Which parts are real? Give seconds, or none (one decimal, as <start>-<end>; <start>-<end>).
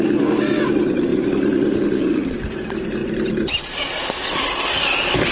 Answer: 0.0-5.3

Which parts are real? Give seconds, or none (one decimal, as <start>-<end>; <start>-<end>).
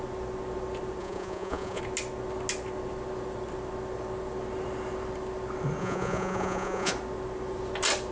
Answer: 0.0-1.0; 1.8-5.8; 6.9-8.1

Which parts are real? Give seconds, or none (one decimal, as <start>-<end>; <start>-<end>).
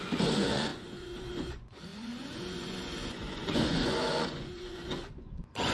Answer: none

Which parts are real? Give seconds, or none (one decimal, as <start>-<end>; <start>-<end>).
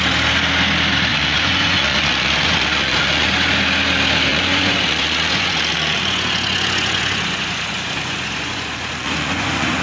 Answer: 0.0-1.1; 3.3-4.3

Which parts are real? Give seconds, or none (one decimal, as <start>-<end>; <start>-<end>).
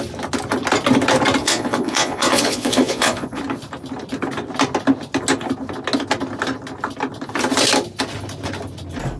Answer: 0.0-1.4; 3.4-9.2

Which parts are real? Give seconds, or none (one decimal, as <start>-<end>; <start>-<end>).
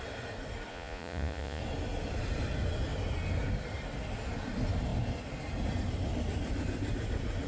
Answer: 0.0-0.7; 1.6-7.5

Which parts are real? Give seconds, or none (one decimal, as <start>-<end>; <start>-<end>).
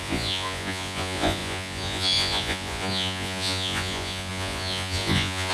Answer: none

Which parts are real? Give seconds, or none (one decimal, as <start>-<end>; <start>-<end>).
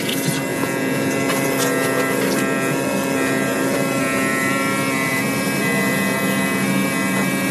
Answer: 0.0-0.5; 1.1-7.5